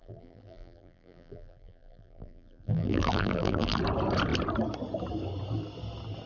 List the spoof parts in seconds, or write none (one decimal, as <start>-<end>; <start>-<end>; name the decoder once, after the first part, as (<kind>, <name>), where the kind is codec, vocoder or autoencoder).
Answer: 0.0-3.8 (vocoder, BigVGAN v2)